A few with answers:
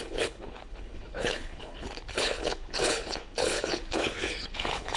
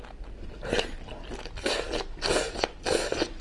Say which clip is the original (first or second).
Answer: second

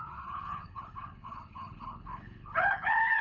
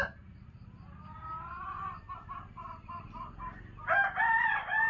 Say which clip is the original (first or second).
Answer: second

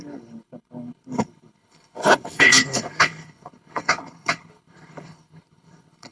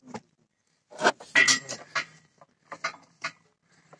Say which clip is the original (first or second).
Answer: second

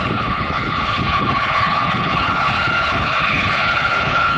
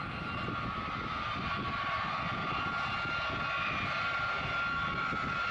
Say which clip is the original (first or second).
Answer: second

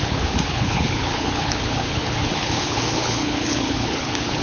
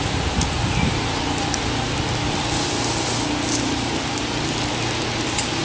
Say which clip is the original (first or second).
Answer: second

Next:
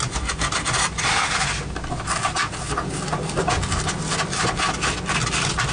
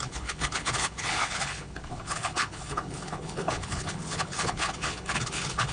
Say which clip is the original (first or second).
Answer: first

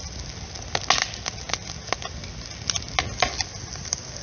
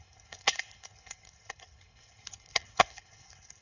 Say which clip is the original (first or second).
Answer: first